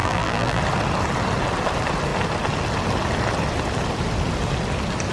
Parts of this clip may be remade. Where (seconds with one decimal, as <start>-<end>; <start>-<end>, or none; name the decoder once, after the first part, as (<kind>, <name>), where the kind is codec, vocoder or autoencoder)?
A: 0.0-0.6 (vocoder, BigVGAN v2)